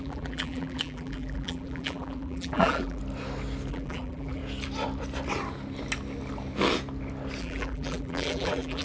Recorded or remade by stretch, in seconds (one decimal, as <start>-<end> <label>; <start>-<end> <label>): 0.0-3.0 remade; 3.0-3.7 recorded; 3.7-4.4 remade; 4.4-7.4 recorded; 7.4-8.8 remade